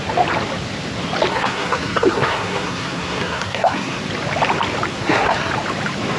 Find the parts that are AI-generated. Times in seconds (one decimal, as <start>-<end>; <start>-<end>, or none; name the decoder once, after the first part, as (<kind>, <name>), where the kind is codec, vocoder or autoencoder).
1.3-4.0 (codec, SNAC); 4.9-5.5